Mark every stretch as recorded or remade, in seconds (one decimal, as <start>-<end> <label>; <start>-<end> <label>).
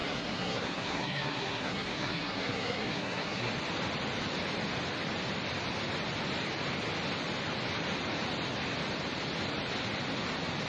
0.0-3.5 remade; 3.5-10.7 recorded